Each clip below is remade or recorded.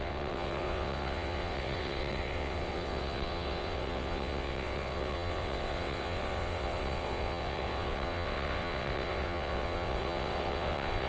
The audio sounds remade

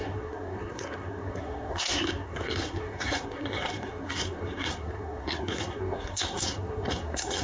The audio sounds remade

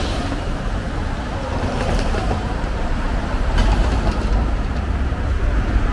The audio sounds remade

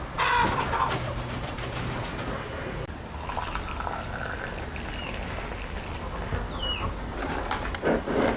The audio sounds recorded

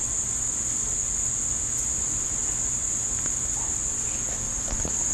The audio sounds recorded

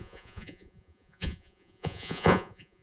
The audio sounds remade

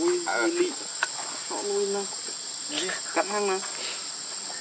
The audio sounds recorded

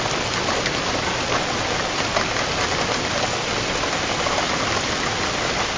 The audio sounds recorded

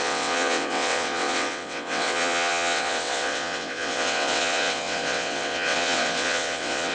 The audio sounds remade